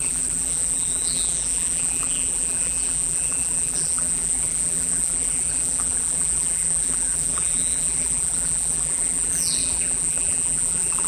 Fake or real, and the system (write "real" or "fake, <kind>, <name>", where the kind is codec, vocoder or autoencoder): fake, vocoder, BigVGAN v2